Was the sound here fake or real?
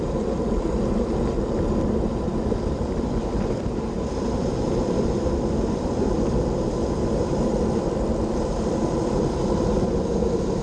fake